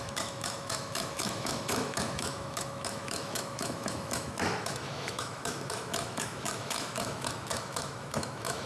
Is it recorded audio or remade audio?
remade